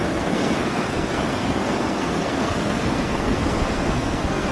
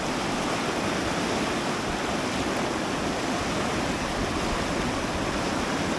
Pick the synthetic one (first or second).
first